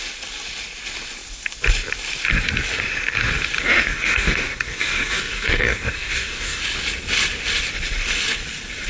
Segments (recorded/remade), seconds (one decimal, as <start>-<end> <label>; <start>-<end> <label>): 0.0-3.9 recorded; 3.9-6.6 remade; 6.6-8.9 recorded